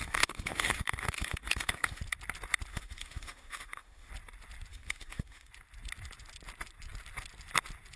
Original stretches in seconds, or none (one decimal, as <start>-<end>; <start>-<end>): 2.0-2.7; 4.1-4.7; 5.5-8.0